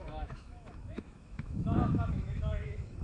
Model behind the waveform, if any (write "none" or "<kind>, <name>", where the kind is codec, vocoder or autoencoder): autoencoder, DAC-VAE